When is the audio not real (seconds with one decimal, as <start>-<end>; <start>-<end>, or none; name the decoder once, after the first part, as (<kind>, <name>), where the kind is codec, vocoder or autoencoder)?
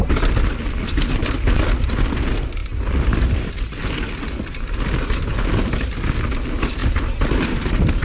none